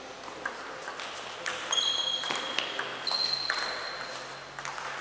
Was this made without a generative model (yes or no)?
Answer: yes